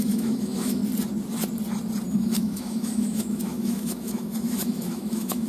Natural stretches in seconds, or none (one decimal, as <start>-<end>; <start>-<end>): 0.8-2.1